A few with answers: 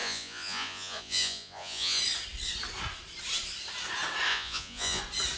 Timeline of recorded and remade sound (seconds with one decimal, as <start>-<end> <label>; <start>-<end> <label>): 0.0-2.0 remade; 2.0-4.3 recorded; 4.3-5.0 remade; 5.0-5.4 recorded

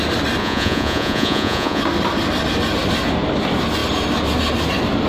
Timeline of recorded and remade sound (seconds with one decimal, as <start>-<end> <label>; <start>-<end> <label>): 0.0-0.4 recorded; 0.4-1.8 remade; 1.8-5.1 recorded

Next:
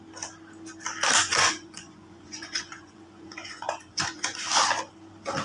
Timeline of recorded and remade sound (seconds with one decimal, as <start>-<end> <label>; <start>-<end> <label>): 0.0-1.2 recorded; 1.2-4.4 remade; 4.4-5.4 recorded

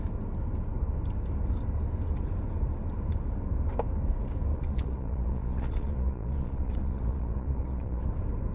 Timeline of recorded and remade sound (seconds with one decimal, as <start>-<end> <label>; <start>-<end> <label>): 0.0-4.5 recorded; 4.5-8.0 remade; 8.0-8.5 recorded

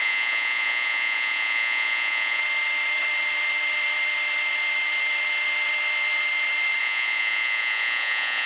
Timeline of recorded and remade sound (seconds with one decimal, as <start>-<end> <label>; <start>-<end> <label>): 0.0-2.4 remade; 2.4-6.8 recorded; 6.8-8.5 remade

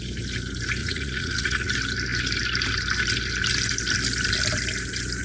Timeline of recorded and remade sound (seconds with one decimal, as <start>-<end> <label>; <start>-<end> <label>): 0.0-0.8 recorded; 0.8-1.7 remade; 1.7-5.2 recorded